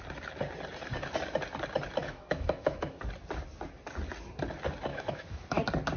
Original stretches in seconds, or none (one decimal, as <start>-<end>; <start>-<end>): 0.0-2.0; 3.0-4.9; 5.6-6.0